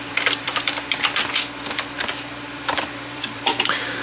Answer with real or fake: fake